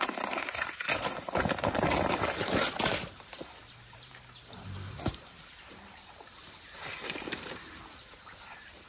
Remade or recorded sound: remade